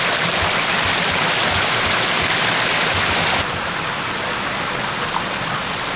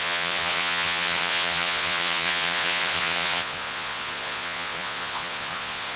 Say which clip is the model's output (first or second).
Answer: second